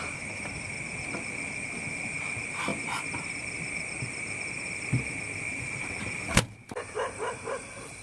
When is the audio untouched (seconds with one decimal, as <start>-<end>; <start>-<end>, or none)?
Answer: 0.0-8.0